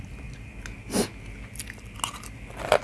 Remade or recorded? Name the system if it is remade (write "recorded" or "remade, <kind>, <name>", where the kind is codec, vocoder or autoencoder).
recorded